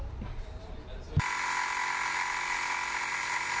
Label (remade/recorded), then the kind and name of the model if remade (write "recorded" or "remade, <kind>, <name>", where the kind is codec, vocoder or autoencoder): recorded